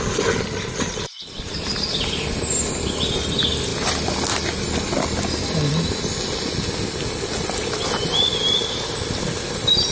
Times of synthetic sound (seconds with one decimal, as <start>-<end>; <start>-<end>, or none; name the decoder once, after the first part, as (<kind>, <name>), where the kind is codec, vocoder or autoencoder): none